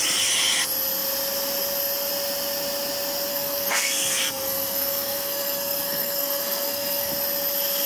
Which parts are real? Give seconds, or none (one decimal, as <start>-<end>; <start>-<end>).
0.0-3.3; 7.1-7.9